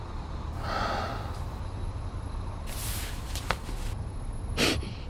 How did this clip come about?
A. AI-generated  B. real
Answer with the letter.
A